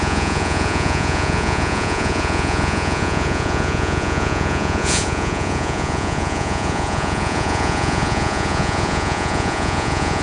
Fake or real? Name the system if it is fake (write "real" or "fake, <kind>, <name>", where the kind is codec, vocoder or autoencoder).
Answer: fake, vocoder, Vocos